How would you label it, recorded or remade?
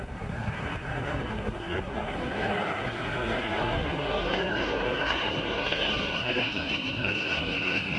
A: remade